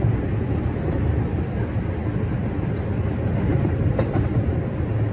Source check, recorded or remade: recorded